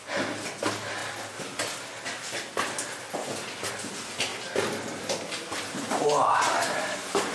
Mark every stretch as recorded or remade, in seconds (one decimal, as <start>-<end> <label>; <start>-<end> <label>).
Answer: 0.0-7.3 recorded